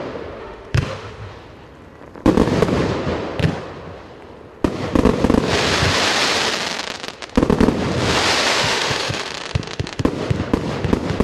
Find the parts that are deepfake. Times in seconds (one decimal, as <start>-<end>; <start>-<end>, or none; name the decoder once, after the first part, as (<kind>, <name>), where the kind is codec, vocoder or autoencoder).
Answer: 0.4-1.3 (autoencoder, DAC-VAE); 8.5-10.0